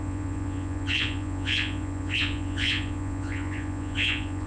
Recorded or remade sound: remade